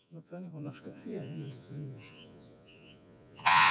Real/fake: fake